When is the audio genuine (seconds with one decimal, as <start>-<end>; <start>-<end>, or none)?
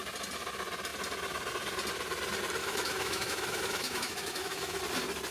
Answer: 0.0-2.6; 4.8-5.3